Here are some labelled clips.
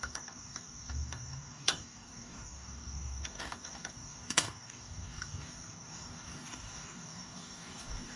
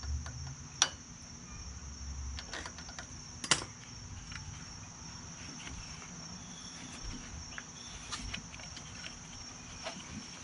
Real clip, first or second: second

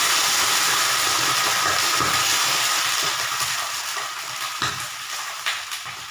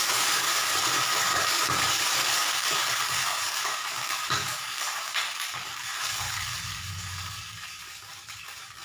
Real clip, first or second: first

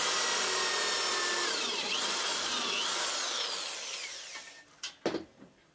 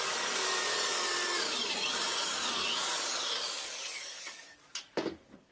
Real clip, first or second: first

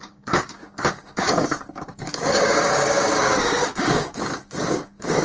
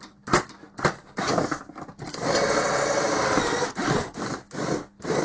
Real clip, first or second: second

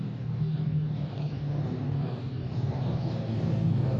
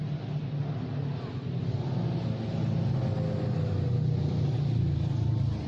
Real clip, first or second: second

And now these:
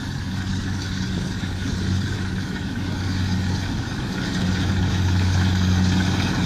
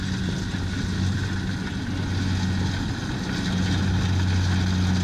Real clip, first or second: second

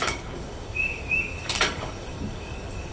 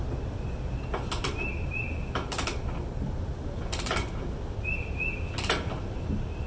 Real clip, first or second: second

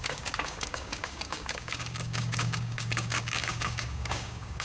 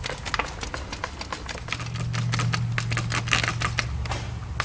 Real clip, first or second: second